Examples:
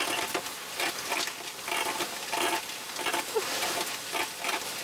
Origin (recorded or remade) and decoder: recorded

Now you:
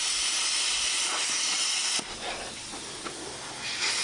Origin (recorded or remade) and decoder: recorded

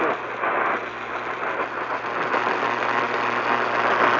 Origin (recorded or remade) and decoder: recorded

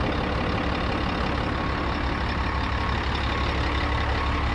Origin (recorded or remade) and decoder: recorded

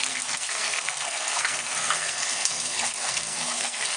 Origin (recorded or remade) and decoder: remade, codec, SNAC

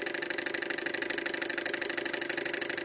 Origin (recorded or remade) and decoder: recorded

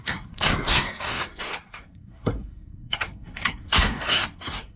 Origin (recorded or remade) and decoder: remade, codec, SNAC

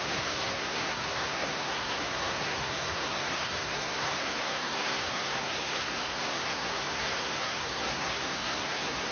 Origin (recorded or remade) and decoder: remade, codec, SNAC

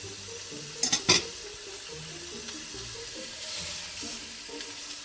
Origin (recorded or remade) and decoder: recorded